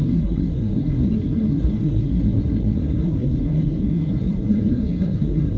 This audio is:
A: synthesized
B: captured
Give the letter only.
A